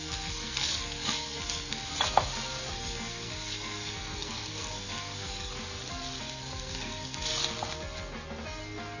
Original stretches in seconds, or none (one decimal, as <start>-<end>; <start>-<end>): 1.9-2.7; 5.5-6.2; 7.3-9.0